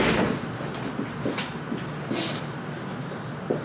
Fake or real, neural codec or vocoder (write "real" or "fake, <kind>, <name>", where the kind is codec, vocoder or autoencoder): real